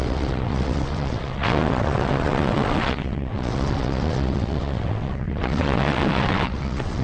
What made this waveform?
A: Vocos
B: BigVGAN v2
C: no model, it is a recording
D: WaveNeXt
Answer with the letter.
D